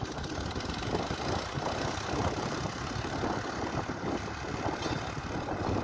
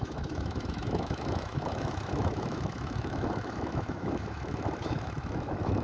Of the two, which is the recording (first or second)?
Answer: first